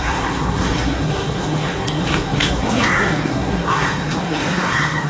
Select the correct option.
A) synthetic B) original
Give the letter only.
A